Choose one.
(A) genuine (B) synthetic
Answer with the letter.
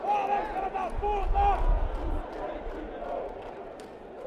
A